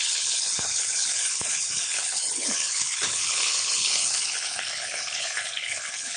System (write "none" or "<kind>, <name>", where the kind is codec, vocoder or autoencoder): codec, HILCodec